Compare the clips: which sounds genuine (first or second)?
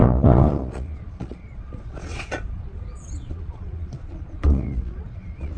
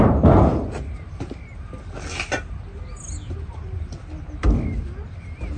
second